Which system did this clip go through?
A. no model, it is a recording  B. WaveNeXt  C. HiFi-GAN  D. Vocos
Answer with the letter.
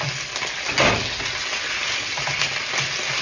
A